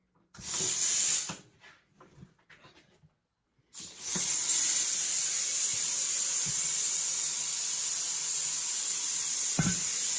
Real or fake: real